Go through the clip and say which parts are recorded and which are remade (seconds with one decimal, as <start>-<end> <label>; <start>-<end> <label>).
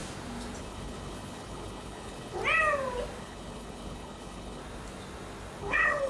0.0-0.6 recorded; 0.6-2.4 remade; 2.4-3.2 recorded; 3.2-4.6 remade; 4.6-5.6 recorded; 5.6-6.1 remade